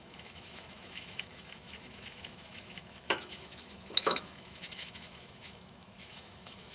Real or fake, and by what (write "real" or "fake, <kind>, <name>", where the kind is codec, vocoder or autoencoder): fake, autoencoder, DAC-VAE